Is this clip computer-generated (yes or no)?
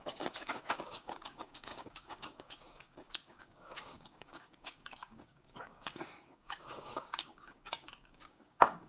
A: yes